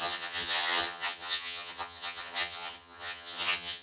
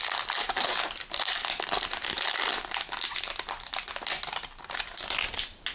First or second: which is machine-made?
first